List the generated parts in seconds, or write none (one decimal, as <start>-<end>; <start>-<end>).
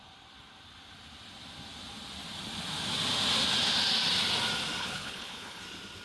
4.8-5.6